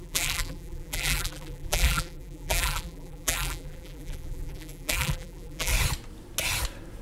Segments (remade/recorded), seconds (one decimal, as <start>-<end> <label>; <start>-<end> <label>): 0.0-5.7 remade; 5.7-7.0 recorded